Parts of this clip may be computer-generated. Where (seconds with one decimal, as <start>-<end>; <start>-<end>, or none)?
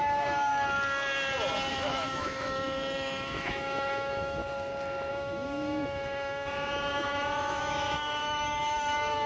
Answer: 0.0-0.5; 1.7-4.4; 5.1-9.3